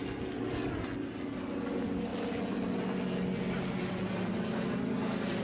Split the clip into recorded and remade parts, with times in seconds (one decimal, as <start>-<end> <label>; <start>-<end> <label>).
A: 0.0-5.4 recorded